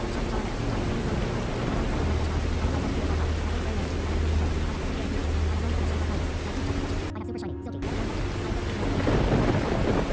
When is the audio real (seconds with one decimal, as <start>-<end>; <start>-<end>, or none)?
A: 0.0-10.1